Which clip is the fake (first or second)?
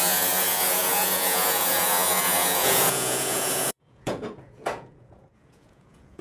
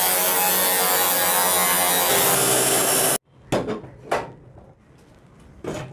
first